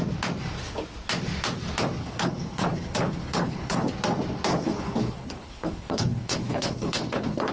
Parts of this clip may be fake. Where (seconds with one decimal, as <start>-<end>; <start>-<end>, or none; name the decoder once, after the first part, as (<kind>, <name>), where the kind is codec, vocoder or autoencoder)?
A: 2.0-3.9 (codec, HILCodec); 4.5-7.5